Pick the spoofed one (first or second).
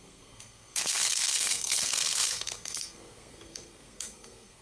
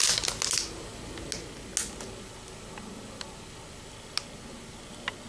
first